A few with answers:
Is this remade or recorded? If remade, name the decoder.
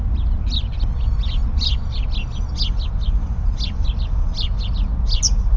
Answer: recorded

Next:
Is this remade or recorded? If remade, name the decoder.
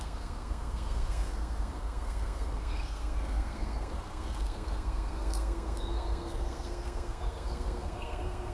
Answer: remade, codec, SNAC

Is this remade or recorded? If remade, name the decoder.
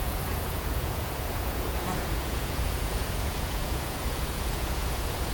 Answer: remade, vocoder, Vocos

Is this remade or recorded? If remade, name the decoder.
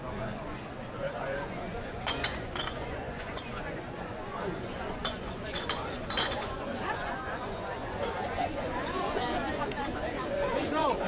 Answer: remade, vocoder, Vocos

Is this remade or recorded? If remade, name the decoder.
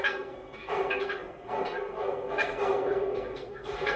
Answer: remade, codec, SNAC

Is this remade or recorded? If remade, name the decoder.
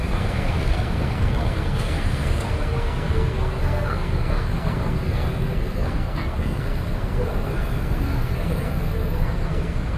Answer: remade, codec, SNAC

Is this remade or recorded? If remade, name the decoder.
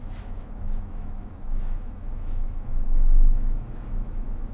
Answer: remade, autoencoder, DAC-VAE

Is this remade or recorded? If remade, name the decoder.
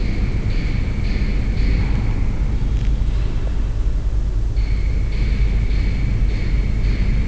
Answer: recorded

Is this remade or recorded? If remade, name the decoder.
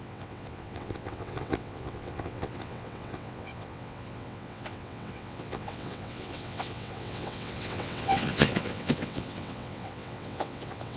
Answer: remade, vocoder, WaveNeXt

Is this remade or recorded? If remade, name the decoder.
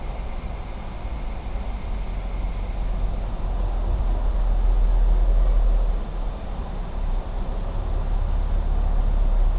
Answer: recorded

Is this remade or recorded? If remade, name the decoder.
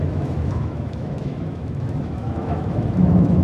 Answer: remade, autoencoder, DAC-VAE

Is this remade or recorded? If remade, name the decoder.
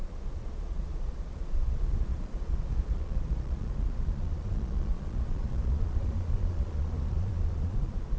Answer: remade, vocoder, Vocos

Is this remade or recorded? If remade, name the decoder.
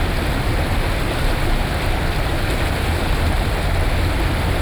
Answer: recorded